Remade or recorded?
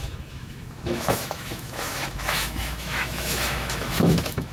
remade